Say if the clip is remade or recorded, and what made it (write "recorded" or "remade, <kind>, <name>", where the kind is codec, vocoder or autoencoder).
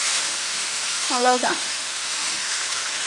remade, autoencoder, DAC-VAE